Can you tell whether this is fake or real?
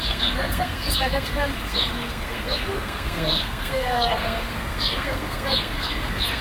fake